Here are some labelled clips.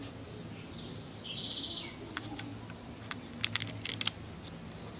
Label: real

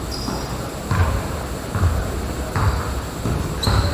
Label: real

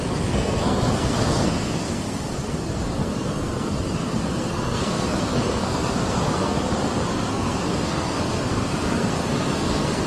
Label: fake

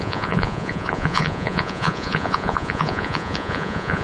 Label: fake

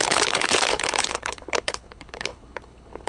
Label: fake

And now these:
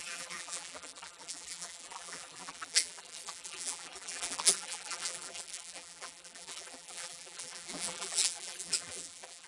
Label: fake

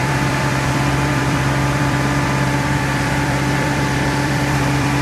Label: fake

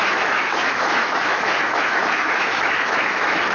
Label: fake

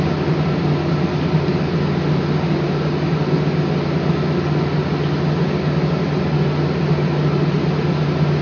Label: real